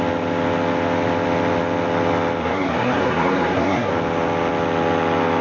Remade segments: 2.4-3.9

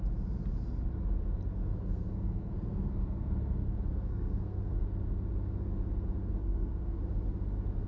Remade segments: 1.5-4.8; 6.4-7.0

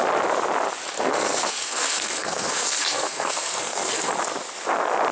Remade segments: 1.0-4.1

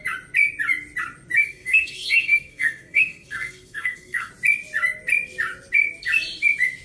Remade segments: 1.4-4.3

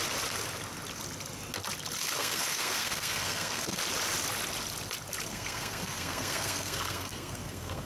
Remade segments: 2.2-3.8; 5.3-7.9